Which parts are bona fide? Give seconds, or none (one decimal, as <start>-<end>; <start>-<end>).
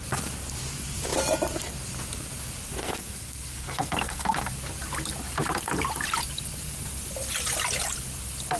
0.0-2.8; 4.5-8.6